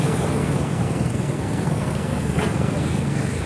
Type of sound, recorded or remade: remade